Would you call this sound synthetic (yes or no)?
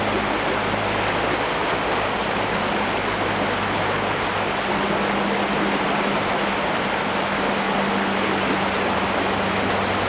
no